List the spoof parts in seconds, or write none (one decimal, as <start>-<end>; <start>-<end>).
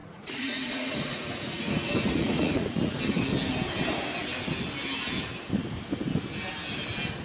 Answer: 0.0-3.0